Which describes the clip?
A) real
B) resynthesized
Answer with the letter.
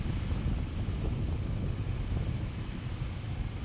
A